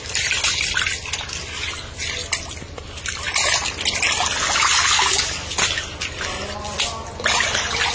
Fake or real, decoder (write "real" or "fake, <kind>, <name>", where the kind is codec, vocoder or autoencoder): real